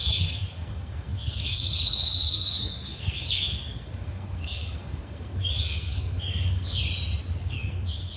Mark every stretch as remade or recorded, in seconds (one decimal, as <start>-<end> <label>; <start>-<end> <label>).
0.0-6.8 remade; 6.8-7.4 recorded; 7.4-8.2 remade